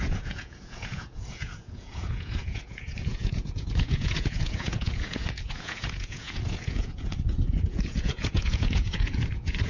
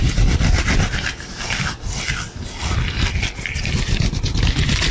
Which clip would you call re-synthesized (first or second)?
first